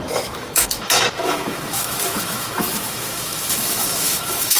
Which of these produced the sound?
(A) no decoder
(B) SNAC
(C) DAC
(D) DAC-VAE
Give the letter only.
D